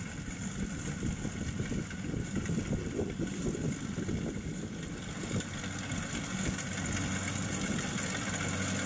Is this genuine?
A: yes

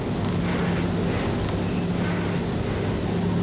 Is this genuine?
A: yes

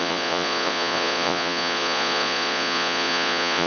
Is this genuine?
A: no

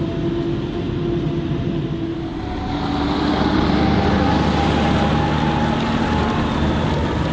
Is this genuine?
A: yes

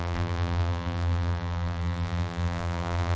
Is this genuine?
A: no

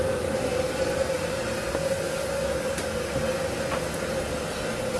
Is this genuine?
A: yes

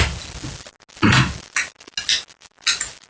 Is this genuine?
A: yes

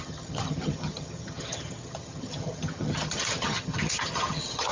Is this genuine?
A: no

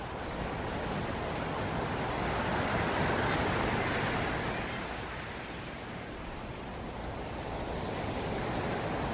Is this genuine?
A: yes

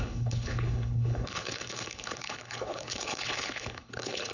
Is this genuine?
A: no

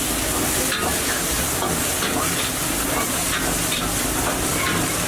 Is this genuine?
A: yes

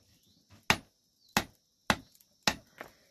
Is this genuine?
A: yes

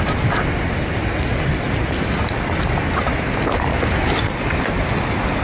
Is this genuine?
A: yes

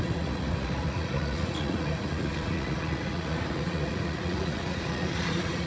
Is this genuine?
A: no